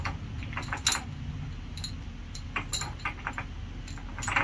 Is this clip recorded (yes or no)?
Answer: yes